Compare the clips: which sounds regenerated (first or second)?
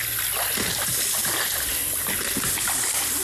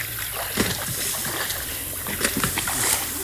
second